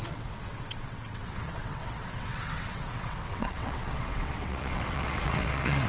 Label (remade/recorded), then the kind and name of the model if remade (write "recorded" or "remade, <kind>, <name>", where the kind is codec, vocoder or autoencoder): remade, vocoder, WaveNeXt